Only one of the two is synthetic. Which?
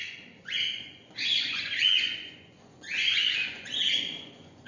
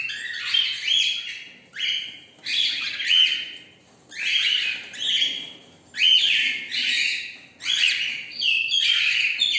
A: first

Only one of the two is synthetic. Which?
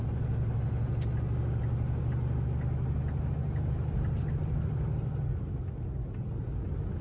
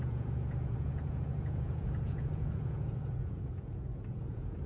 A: second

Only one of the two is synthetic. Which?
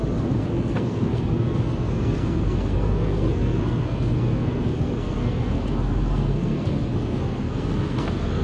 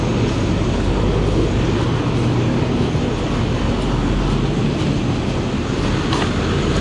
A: first